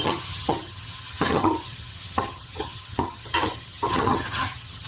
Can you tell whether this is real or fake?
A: fake